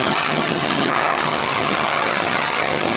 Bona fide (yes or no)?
no